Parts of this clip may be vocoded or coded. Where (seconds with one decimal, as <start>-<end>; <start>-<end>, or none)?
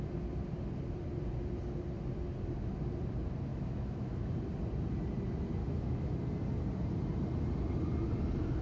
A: 3.5-4.4; 5.6-6.2